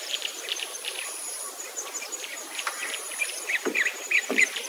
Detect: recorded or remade remade